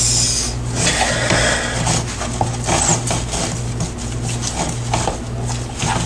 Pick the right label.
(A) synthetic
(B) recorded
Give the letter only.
B